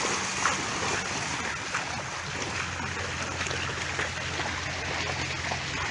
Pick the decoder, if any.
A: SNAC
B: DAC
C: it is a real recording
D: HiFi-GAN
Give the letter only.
C